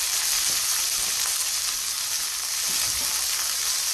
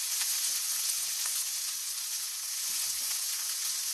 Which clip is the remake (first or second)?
second